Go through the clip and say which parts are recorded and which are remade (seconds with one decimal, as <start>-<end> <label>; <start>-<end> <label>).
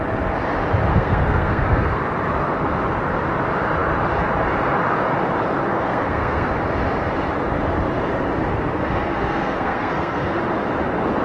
0.0-0.9 recorded; 0.9-2.0 remade; 2.0-5.7 recorded; 5.7-6.5 remade; 6.5-8.5 recorded; 8.5-10.4 remade; 10.4-11.2 recorded